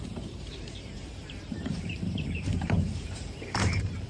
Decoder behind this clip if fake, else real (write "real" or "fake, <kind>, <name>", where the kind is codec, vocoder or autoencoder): fake, vocoder, BigVGAN v2